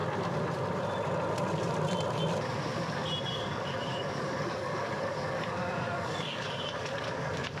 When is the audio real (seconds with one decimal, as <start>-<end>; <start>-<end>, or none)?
0.0-3.3